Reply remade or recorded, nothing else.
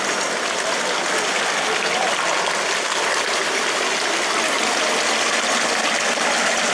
recorded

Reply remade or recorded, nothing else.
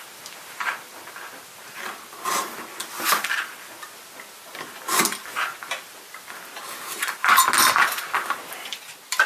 recorded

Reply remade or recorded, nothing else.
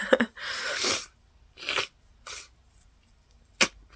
recorded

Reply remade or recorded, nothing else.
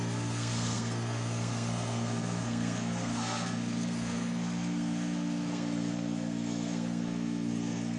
remade